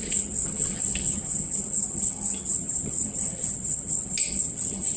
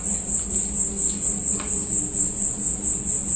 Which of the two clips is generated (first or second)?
first